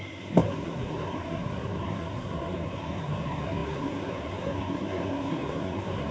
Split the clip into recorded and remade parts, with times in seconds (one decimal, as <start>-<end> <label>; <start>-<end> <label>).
0.0-6.1 remade

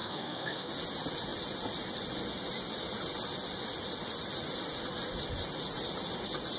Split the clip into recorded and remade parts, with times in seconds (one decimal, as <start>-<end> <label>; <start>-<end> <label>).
0.0-0.7 remade; 0.7-6.6 recorded

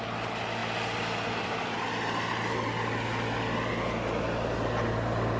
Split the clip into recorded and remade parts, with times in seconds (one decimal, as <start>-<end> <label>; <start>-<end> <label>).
0.0-5.4 recorded

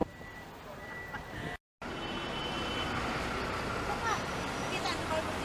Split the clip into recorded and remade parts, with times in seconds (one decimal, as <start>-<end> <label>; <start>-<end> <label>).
0.0-5.4 recorded

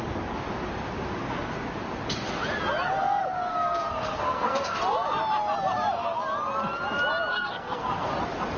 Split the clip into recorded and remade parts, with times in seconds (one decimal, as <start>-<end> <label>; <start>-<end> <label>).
0.0-3.5 recorded; 3.5-4.8 remade; 4.8-7.3 recorded; 7.3-8.1 remade; 8.1-8.6 recorded

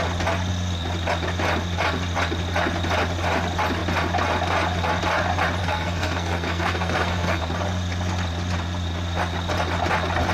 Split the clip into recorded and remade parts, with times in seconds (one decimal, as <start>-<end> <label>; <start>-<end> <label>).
0.0-5.6 recorded; 5.6-7.4 remade; 7.4-10.3 recorded

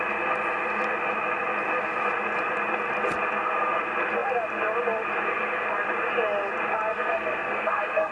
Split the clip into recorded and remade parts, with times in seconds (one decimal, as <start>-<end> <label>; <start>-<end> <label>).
0.0-6.9 recorded; 6.9-8.1 remade